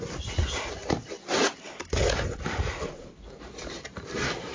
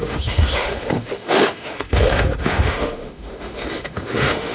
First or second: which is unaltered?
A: first